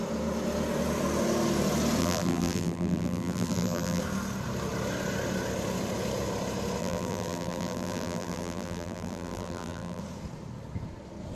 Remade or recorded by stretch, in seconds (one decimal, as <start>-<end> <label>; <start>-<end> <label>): 0.0-2.0 recorded; 2.0-4.0 remade; 4.0-6.8 recorded; 6.8-10.0 remade; 10.0-11.3 recorded